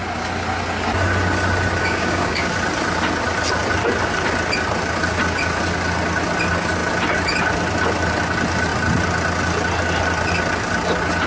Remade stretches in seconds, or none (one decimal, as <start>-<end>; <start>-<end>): 1.8-2.5